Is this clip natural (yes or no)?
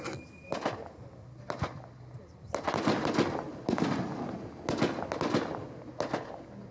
yes